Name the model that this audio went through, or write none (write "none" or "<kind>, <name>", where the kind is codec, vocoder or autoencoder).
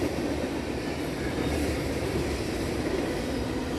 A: none